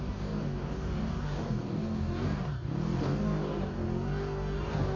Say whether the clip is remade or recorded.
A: remade